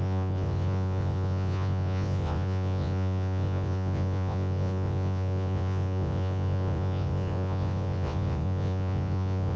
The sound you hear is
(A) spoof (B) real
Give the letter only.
A